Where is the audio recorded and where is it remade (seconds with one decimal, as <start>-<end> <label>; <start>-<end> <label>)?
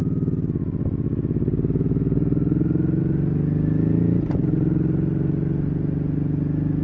0.0-6.8 recorded